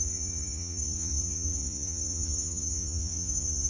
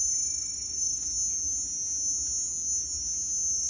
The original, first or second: second